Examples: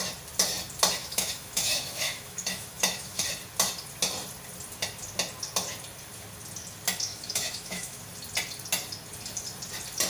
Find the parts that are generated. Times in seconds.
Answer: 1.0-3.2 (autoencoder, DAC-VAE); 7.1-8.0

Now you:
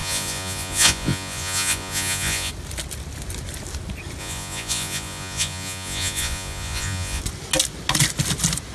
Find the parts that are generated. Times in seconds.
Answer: 0.0-2.5 (vocoder, Vocos); 4.2-7.2